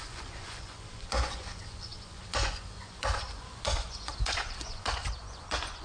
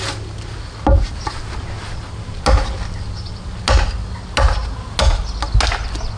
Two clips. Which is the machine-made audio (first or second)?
first